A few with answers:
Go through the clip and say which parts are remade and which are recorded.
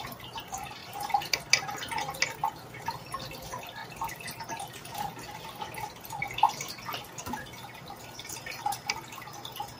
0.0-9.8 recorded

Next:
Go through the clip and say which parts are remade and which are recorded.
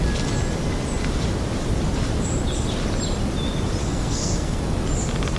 0.0-3.8 recorded; 3.8-4.6 remade; 4.6-5.4 recorded